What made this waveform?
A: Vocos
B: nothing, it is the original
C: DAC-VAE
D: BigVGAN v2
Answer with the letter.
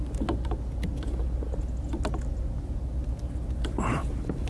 B